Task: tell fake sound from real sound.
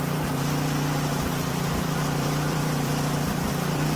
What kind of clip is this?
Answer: fake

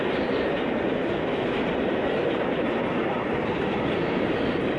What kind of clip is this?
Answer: fake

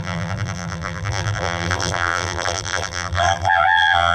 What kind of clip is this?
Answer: fake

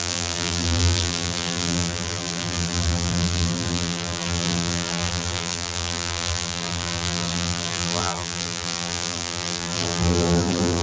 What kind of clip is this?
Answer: fake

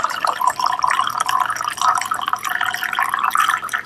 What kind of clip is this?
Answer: real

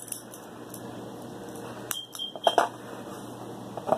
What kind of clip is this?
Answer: fake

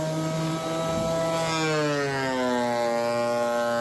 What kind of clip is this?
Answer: real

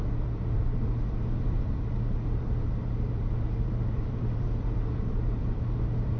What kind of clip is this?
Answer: fake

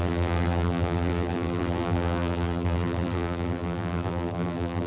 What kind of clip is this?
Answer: fake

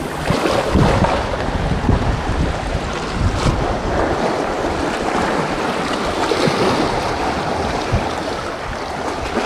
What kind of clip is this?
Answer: real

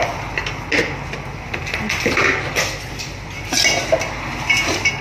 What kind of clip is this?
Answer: real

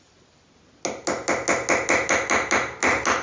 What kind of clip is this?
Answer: real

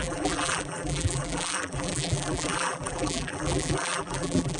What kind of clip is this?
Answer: fake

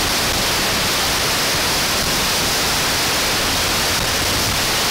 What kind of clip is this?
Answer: real